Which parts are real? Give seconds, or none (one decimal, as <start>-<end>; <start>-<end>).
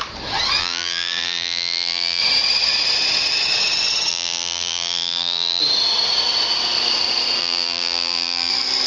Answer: 0.0-0.6; 2.2-4.1; 5.6-7.4; 8.5-8.9